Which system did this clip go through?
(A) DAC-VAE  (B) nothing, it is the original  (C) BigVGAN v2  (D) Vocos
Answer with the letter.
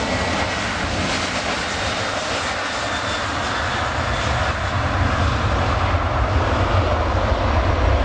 B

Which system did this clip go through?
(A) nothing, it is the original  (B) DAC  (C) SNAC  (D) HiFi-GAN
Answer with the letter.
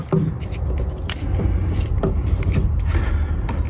A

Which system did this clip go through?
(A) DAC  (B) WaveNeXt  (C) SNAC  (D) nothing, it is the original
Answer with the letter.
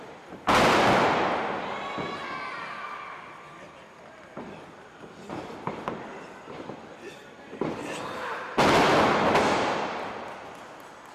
D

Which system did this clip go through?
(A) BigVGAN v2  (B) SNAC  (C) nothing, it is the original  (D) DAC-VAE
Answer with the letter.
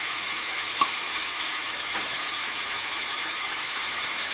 D